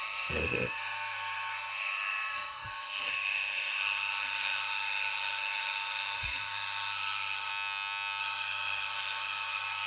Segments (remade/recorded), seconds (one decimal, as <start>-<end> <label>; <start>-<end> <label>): 0.0-7.5 remade; 7.5-8.2 recorded; 8.2-9.9 remade